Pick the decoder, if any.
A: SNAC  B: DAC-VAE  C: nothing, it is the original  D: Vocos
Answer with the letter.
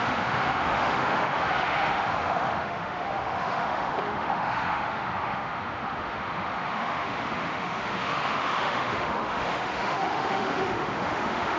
B